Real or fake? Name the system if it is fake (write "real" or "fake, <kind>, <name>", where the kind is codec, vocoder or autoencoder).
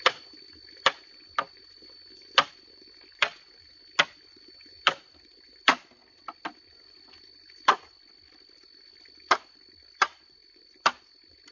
real